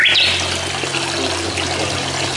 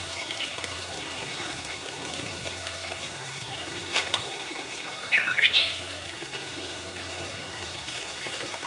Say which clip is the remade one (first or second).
second